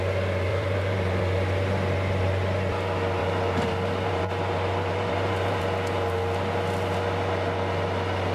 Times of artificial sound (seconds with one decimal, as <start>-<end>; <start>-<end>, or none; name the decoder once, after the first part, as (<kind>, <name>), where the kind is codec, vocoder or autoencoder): 0.5-1.2 (vocoder, BigVGAN v2); 3.2-5.6

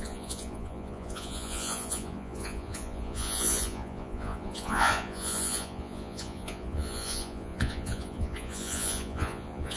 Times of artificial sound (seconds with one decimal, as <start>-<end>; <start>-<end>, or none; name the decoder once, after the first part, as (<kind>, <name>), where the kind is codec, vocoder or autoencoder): 0.0-9.8 (vocoder, Vocos)

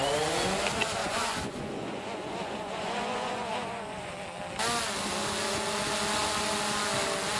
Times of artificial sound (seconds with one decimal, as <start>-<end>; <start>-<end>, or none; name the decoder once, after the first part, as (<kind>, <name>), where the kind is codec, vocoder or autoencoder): 1.0-4.1 (vocoder, Vocos)

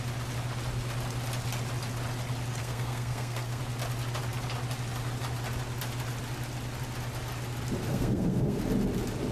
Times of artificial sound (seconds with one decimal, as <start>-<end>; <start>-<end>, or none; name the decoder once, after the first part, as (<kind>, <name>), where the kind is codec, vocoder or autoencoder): 2.6-3.6 (codec, SNAC); 7.9-8.6

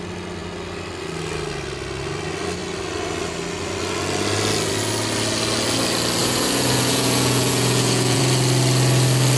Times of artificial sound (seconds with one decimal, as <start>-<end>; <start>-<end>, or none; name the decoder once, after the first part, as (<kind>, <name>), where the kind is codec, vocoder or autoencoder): 6.2-8.2 (vocoder, Vocos)

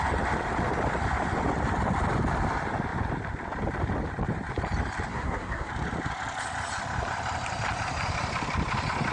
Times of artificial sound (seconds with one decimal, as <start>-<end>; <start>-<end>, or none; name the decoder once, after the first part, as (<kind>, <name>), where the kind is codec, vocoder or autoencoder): 5.1-5.7 (codec, SNAC)

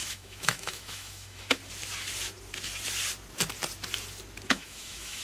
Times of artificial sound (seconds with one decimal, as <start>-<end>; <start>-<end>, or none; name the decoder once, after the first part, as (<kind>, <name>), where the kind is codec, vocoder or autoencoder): 0.0-1.6 (autoencoder, DAC-VAE); 4.5-5.2